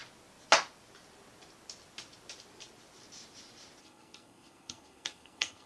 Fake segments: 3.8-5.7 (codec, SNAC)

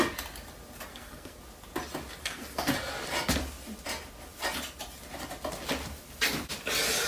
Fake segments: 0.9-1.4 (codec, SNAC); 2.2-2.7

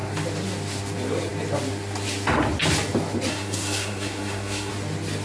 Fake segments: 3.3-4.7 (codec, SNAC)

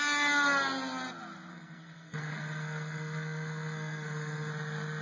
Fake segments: 1.5-4.5 (codec, SNAC)